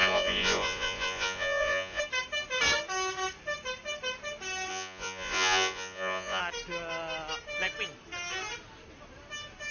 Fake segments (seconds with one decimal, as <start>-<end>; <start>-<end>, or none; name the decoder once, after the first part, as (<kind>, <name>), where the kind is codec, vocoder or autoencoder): 0.0-2.0 (vocoder, Vocos); 4.7-6.4